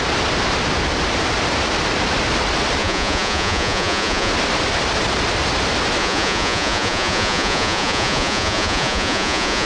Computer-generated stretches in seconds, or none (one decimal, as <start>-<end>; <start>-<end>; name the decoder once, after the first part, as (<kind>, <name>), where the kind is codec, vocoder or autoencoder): 2.8-4.3 (vocoder, Vocos); 6.0-9.7